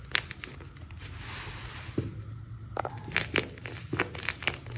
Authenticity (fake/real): real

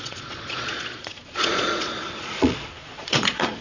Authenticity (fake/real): fake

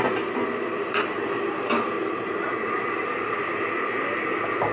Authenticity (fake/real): real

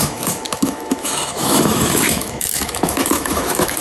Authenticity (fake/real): fake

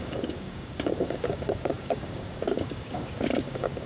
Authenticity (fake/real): fake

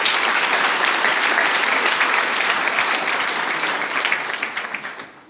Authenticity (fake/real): fake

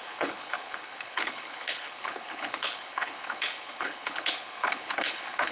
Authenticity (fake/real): fake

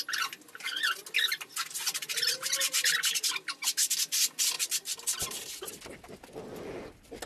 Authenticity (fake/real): real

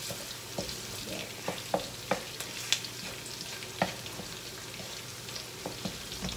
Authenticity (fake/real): real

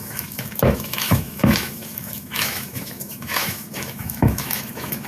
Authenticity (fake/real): fake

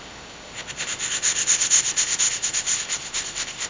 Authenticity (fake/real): fake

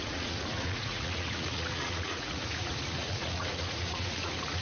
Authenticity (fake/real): fake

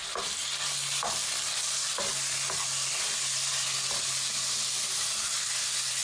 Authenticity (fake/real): real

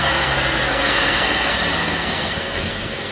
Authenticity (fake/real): fake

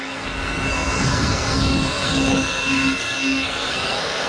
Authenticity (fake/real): fake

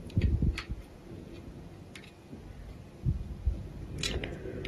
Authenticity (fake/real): real